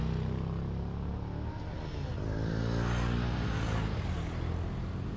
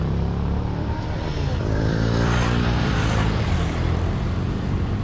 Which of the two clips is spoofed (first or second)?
second